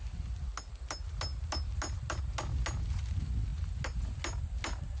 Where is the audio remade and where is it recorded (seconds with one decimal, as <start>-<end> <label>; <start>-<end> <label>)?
0.0-5.0 recorded